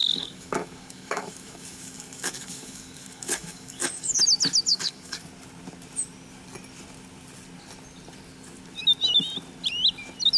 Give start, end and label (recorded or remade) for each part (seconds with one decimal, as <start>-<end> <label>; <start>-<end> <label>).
0.0-4.2 remade; 4.2-4.7 recorded; 4.7-5.2 remade; 5.2-10.4 recorded